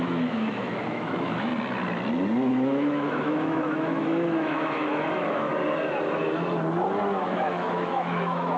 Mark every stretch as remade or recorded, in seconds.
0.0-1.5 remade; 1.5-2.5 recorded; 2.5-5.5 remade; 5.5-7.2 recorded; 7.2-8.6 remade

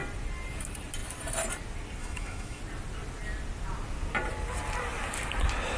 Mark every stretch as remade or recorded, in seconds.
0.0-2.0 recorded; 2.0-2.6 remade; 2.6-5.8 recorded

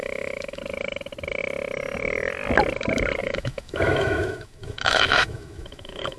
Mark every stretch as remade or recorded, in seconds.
0.0-0.6 remade; 0.6-3.2 recorded; 3.2-6.2 remade

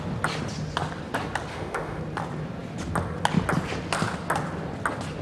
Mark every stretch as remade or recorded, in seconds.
0.0-1.5 recorded; 1.5-2.0 remade; 2.0-5.2 recorded